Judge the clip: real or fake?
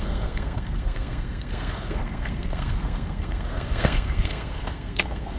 fake